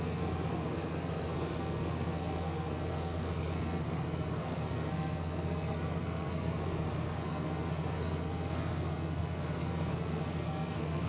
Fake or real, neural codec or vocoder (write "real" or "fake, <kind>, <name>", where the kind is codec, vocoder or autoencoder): fake, codec, SNAC